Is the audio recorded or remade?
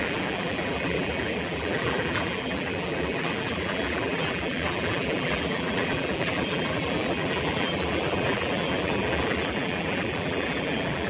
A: remade